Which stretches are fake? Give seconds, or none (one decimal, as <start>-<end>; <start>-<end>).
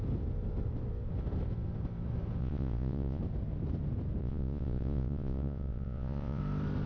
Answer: 2.4-3.2; 4.2-6.4